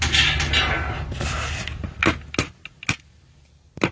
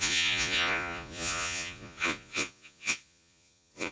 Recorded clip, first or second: first